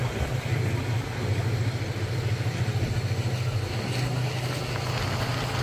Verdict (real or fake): real